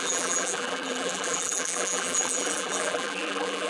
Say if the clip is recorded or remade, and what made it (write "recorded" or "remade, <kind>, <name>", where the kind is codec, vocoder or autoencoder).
remade, vocoder, BigVGAN v2